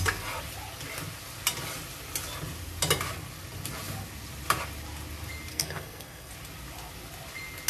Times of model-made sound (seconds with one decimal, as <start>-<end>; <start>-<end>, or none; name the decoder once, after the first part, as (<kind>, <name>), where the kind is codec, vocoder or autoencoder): 5.5-6.3 (codec, SNAC)